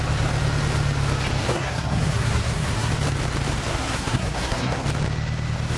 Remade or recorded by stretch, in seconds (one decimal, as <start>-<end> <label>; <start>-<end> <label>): 0.0-1.4 recorded; 1.4-2.9 remade; 2.9-3.7 recorded; 3.7-4.8 remade; 4.8-5.8 recorded